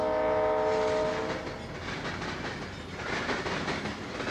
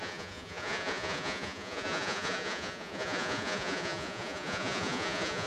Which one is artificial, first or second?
second